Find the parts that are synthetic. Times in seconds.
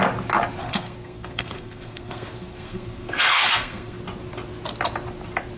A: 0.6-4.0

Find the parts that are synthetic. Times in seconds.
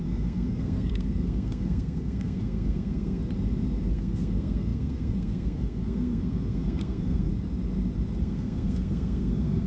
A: 0.0-3.2; 3.9-7.3; 8.2-9.7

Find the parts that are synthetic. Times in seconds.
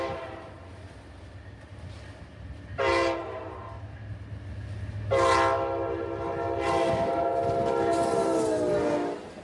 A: none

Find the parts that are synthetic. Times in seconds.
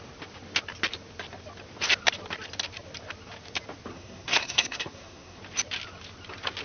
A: 3.9-5.4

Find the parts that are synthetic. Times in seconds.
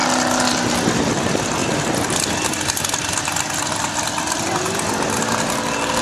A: none